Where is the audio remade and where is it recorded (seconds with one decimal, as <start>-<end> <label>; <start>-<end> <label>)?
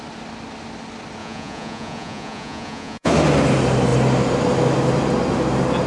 0.0-1.2 recorded; 1.2-3.1 remade; 3.1-5.9 recorded